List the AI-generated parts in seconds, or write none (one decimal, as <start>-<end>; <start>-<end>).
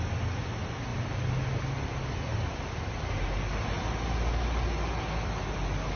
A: none